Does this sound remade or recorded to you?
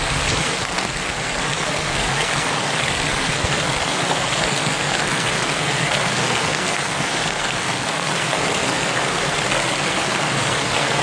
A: remade